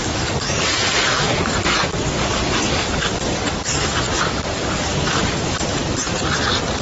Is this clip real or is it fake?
real